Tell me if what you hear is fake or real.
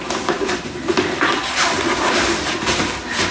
real